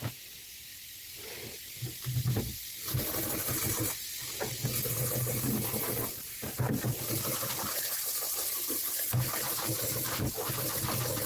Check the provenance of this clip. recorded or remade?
recorded